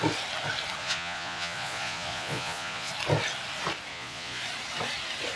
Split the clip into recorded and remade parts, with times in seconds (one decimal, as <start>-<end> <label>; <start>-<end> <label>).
0.0-0.8 recorded; 0.8-2.9 remade; 2.9-3.9 recorded; 3.9-4.4 remade; 4.4-5.4 recorded

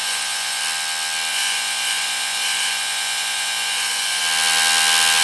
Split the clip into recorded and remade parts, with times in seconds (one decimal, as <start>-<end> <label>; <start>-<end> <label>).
0.0-0.6 remade; 0.6-1.3 recorded; 1.3-4.2 remade; 4.2-5.2 recorded

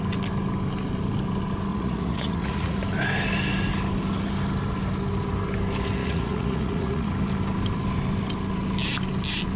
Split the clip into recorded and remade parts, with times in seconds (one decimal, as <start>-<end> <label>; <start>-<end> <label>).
0.0-1.7 recorded; 1.7-2.8 remade; 2.8-6.0 recorded; 6.0-7.1 remade; 7.1-9.6 recorded

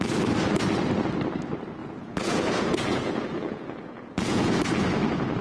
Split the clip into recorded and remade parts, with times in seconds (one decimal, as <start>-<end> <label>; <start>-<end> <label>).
0.0-1.8 recorded; 1.8-4.6 remade; 4.6-5.4 recorded

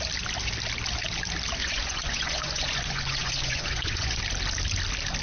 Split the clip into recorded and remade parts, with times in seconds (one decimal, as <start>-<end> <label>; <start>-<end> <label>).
0.0-1.6 recorded; 1.6-4.2 remade; 4.2-5.2 recorded

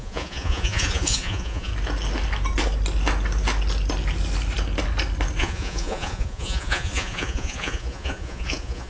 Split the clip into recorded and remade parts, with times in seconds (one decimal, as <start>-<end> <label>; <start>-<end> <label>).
0.0-1.7 remade; 1.7-5.4 recorded; 5.4-8.9 remade

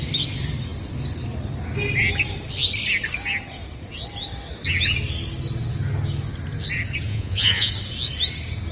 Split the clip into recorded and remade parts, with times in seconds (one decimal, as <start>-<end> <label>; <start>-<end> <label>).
0.0-7.1 recorded; 7.1-7.7 remade; 7.7-8.7 recorded